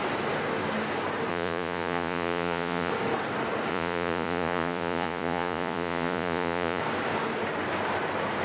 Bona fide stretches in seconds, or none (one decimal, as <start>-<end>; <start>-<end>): 0.0-1.3; 2.9-3.7; 6.8-8.4